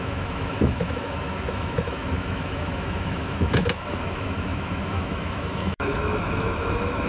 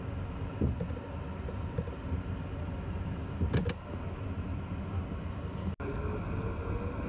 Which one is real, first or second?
second